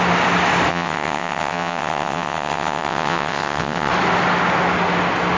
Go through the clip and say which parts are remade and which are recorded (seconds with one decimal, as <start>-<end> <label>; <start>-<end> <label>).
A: 0.0-0.7 recorded; 0.7-3.9 remade; 3.9-5.4 recorded